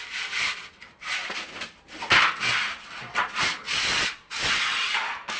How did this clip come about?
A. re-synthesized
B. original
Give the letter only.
B